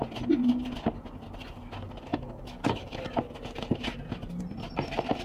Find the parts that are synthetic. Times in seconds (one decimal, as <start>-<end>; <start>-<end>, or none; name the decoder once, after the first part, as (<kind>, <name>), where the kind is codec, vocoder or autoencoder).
2.1-3.2 (codec, DAC)